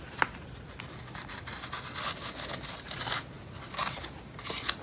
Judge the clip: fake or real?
real